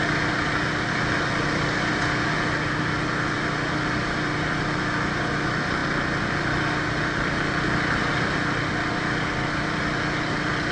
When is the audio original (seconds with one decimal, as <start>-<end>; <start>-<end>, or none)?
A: 0.0-10.7